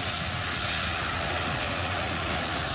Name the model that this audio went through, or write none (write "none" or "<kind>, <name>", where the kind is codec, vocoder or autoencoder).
vocoder, Vocos